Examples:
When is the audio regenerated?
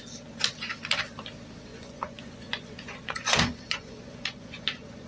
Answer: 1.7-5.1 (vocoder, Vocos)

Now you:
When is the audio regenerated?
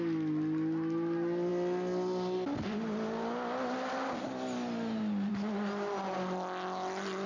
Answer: none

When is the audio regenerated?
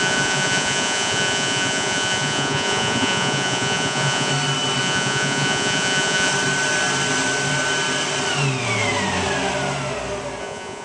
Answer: 0.0-4.3 (vocoder, Vocos); 4.8-6.3; 10.4-10.8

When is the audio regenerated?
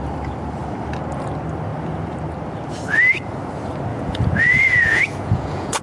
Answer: 3.9-5.8 (vocoder, Vocos)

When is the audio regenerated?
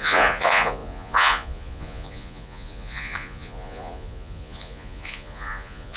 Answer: 0.0-6.0 (vocoder, Vocos)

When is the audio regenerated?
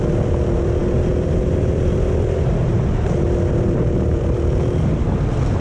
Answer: none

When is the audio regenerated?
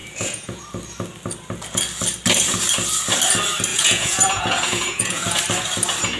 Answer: 0.0-0.6 (vocoder, Vocos); 3.7-5.4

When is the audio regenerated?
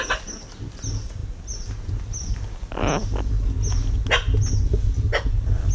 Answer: none